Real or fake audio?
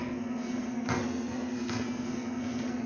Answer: fake